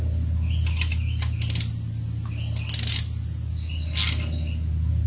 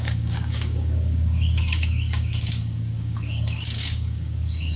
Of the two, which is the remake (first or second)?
second